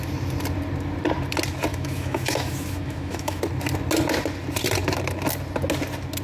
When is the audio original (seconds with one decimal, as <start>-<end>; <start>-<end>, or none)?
0.0-1.7; 3.4-6.2